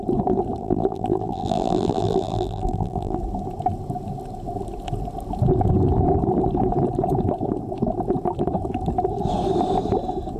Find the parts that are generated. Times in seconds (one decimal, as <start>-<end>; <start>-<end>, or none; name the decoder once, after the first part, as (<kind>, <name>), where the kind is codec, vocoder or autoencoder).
0.6-3.2 (vocoder, BigVGAN v2)

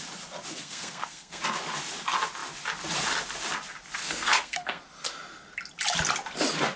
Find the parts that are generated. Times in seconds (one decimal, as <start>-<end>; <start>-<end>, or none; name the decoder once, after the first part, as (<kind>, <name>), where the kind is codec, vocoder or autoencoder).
0.5-1.4 (codec, SNAC); 4.0-4.8